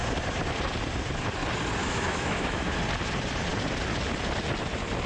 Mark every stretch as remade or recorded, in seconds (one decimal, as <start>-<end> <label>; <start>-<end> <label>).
0.0-1.8 recorded; 1.8-2.8 remade; 2.8-5.1 recorded